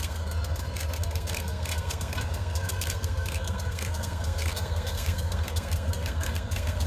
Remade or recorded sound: remade